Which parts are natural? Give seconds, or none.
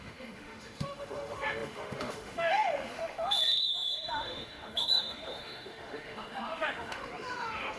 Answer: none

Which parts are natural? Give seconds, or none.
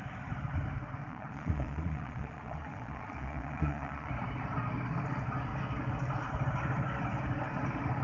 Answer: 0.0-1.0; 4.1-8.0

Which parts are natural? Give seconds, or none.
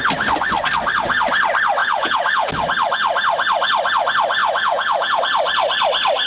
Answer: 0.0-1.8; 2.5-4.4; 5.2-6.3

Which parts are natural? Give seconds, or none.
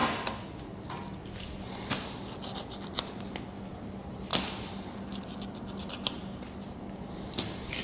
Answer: 0.0-7.8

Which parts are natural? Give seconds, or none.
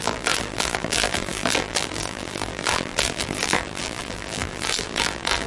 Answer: none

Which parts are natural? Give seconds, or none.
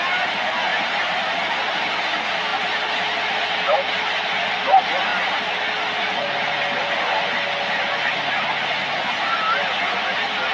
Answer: 0.0-10.5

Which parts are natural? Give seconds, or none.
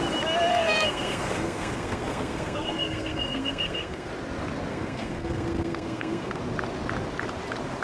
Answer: 0.0-0.5; 4.1-4.7; 6.4-7.8